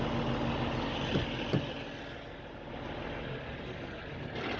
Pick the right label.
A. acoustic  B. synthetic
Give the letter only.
A